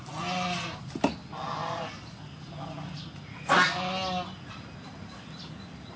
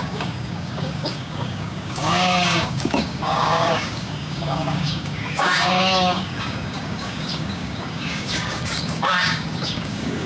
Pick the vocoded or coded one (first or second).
second